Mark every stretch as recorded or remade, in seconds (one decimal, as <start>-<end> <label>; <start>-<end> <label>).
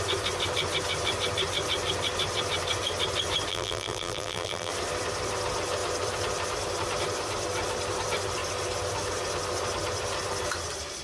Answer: 0.0-3.5 recorded; 3.5-4.7 remade; 4.7-11.0 recorded